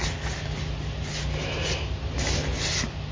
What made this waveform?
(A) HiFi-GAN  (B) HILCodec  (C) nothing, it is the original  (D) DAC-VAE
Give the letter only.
C